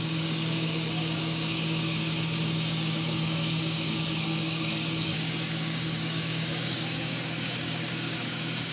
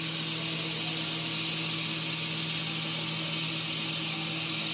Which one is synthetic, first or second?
first